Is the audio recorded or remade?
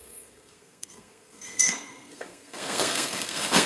remade